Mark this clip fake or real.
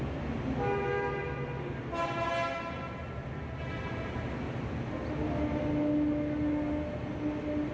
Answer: real